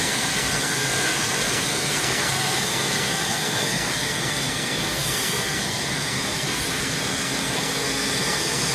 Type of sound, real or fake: fake